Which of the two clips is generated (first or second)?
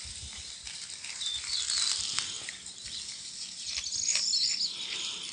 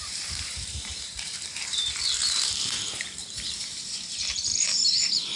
second